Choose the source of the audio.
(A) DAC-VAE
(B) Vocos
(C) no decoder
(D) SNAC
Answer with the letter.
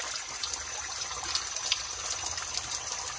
C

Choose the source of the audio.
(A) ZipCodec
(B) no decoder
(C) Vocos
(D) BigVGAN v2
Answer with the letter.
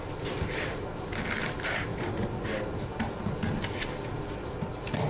B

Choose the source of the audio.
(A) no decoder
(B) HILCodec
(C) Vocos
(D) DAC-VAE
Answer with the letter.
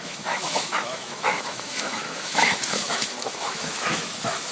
D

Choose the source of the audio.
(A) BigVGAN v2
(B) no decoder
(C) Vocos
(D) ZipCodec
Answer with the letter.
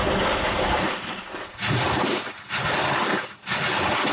B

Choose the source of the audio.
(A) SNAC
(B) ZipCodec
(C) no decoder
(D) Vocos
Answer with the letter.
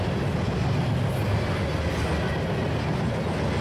C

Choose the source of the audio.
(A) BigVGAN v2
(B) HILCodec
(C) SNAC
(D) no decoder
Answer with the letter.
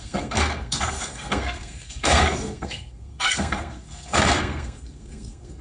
C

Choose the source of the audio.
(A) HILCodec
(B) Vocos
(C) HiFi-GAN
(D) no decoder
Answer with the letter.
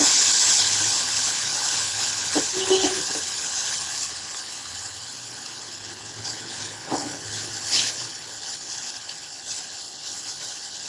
A